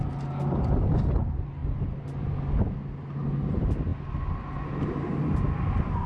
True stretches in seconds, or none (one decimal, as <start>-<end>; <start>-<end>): 0.0-6.1

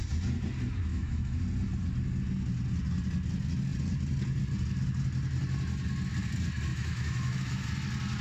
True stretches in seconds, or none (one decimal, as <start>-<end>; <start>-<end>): 0.0-0.9; 1.4-6.7; 7.7-8.2

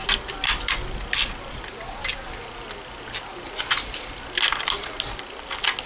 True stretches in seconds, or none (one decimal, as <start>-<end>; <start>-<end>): 0.0-5.9

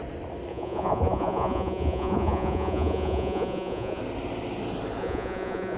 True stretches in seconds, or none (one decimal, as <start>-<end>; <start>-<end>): 0.0-0.5; 4.0-5.0

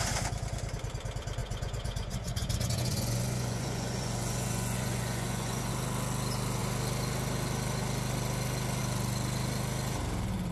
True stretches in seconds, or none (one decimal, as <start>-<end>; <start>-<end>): 0.0-1.4; 5.7-10.5